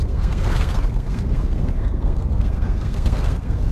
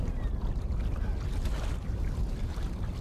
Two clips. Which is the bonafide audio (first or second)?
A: second